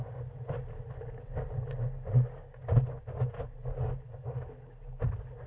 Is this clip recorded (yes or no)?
yes